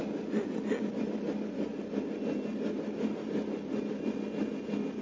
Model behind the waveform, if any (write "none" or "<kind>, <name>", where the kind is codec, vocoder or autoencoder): none